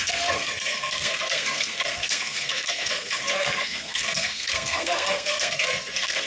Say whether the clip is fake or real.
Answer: fake